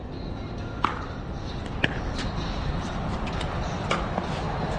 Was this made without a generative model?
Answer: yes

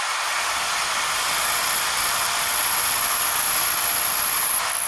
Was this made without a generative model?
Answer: yes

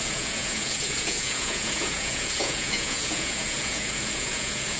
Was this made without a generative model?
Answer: no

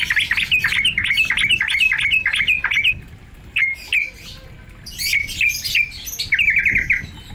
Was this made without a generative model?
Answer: yes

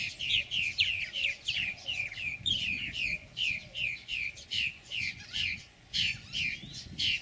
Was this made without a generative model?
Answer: no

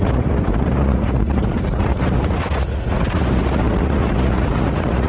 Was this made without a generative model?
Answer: no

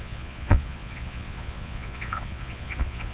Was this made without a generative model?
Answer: no